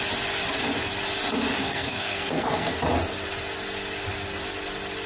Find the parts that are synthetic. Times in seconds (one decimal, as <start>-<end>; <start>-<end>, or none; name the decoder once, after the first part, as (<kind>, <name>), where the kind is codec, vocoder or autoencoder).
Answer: 1.6-2.8 (codec, SNAC)